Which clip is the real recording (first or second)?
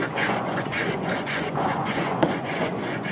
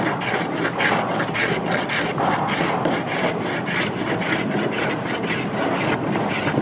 second